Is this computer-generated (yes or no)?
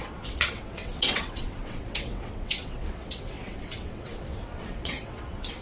yes